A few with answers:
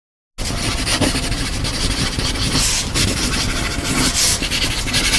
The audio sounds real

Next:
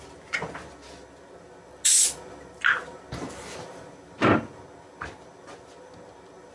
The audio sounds real